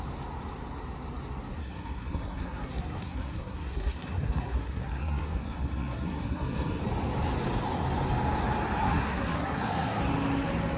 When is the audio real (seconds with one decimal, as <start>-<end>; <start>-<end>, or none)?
0.0-1.6; 6.8-8.8; 10.0-10.8